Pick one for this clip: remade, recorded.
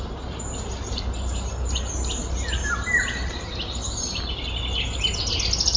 recorded